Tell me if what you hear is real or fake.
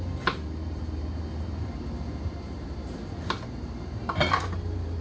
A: fake